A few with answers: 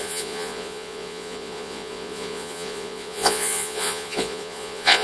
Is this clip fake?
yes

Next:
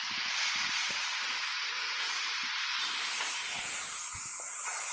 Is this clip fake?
no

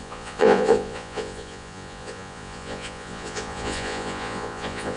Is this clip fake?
yes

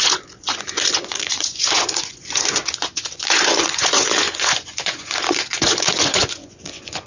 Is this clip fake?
yes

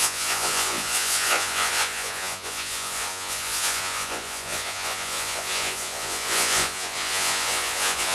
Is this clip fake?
yes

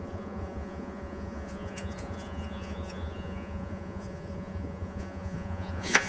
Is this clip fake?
yes